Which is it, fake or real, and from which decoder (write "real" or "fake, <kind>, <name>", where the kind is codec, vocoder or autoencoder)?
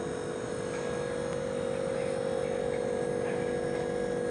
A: real